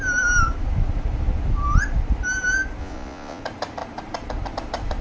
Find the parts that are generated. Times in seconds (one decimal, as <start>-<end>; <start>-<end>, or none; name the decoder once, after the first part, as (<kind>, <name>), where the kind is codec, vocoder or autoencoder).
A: 2.8-3.4 (vocoder, Vocos)